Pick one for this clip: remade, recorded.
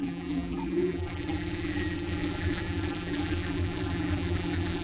remade